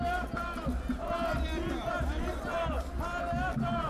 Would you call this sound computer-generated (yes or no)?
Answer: no